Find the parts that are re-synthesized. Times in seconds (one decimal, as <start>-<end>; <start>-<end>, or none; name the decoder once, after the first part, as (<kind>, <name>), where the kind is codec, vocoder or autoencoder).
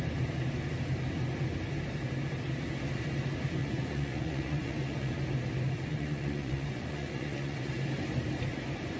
3.6-5.1 (vocoder, Vocos); 5.9-7.7